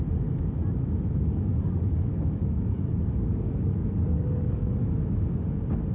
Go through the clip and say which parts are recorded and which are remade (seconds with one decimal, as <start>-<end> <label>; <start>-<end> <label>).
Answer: 0.0-1.2 recorded; 1.2-4.7 remade; 4.7-5.9 recorded